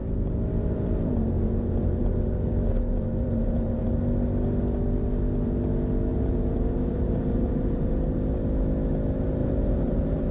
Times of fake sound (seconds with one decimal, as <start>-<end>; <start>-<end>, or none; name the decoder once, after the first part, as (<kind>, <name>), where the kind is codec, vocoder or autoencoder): 0.0-4.0 (vocoder, BigVGAN v2); 6.1-7.9; 9.4-10.3